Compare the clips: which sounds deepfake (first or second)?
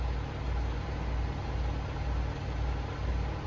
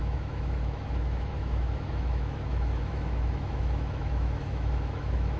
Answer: second